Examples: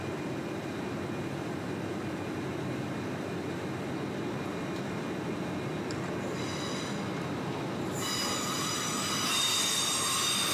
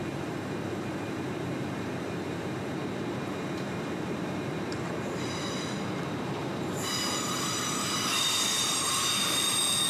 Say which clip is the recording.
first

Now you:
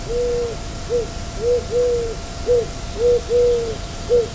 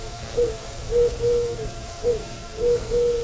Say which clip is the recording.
first